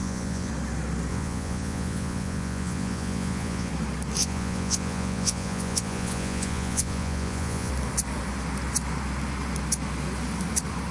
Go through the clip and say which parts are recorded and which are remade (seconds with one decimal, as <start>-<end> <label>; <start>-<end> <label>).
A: 0.0-0.5 remade; 0.5-1.1 recorded; 1.1-3.7 remade; 3.7-4.2 recorded; 4.2-7.7 remade; 7.7-10.9 recorded